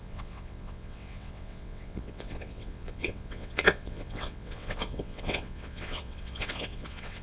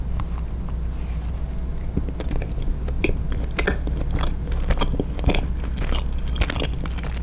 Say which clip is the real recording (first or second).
second